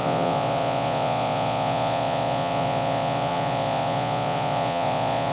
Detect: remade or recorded remade